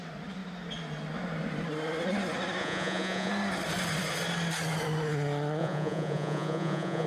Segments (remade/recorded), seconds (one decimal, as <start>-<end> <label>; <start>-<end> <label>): 0.0-2.6 recorded; 2.6-3.3 remade; 3.3-5.6 recorded; 5.6-7.1 remade